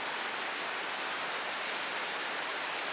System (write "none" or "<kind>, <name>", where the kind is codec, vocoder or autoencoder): none